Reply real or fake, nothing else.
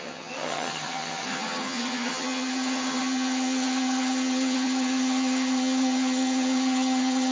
fake